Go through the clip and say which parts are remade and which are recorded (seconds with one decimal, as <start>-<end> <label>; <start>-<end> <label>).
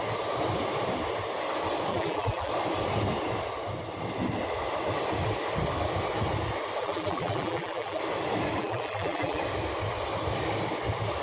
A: 0.0-1.9 recorded; 1.9-2.5 remade; 2.5-6.8 recorded; 6.8-8.0 remade; 8.0-8.6 recorded; 8.6-9.4 remade; 9.4-11.2 recorded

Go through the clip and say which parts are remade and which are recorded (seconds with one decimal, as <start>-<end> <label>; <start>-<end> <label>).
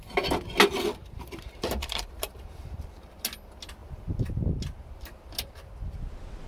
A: 0.0-1.0 recorded; 1.0-3.1 remade; 3.1-6.5 recorded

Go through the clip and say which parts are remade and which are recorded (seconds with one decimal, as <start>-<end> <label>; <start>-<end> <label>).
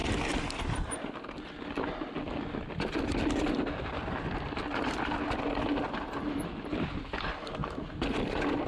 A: 0.0-8.7 recorded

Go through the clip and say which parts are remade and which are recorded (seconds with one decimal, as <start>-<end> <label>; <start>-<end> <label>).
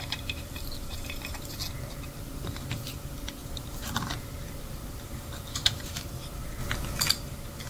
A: 0.0-1.6 remade; 1.6-2.2 recorded; 2.2-6.6 remade; 6.6-7.1 recorded; 7.1-7.7 remade